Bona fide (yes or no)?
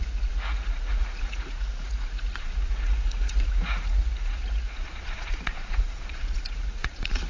no